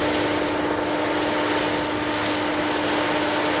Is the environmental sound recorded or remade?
recorded